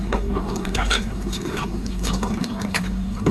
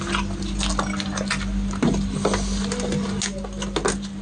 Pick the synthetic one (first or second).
first